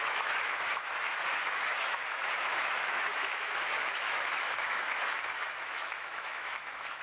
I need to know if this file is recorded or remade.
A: remade